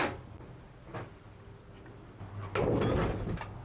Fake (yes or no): no